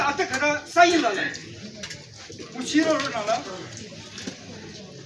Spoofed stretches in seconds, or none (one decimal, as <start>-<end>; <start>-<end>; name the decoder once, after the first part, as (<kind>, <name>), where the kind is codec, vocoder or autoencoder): none